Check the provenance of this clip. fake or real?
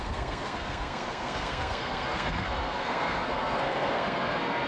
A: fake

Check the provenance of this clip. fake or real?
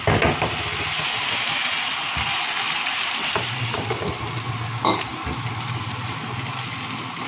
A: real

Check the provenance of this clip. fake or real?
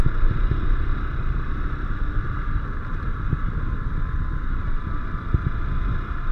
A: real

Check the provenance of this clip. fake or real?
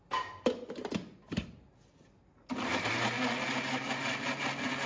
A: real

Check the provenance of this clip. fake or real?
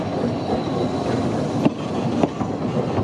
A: real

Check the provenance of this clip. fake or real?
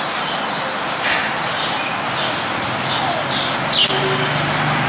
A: real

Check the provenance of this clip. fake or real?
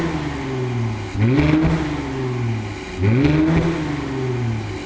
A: real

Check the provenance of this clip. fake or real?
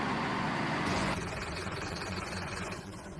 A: fake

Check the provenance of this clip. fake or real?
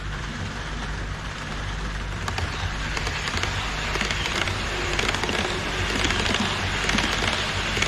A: real